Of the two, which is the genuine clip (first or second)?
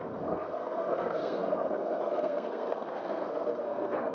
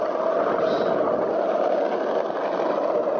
second